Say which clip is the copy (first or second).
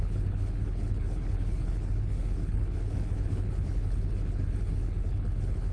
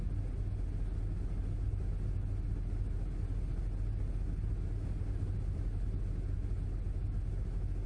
first